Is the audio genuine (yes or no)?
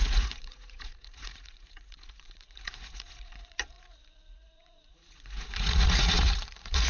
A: no